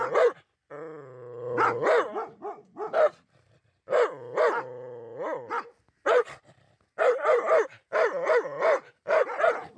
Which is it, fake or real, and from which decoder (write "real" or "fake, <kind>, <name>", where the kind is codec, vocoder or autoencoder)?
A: real